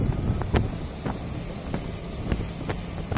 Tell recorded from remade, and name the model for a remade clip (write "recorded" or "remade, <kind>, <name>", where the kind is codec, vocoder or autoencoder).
recorded